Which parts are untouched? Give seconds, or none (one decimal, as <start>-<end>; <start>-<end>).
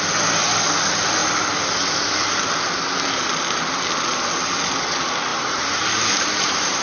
0.0-5.3